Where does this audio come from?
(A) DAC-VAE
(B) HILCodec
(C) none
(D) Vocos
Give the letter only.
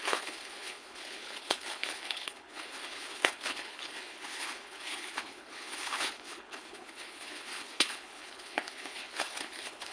B